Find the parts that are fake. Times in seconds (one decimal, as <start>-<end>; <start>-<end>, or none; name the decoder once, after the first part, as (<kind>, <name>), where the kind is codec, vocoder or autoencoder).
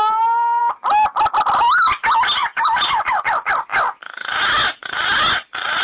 none